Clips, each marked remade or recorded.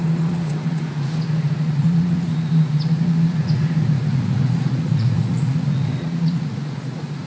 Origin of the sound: remade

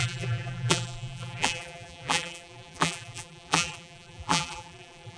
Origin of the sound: remade